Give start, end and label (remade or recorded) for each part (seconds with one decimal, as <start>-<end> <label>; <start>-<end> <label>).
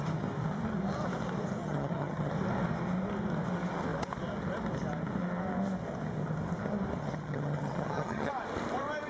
0.0-1.6 recorded; 1.6-2.3 remade; 2.3-7.0 recorded; 7.0-8.3 remade; 8.3-9.1 recorded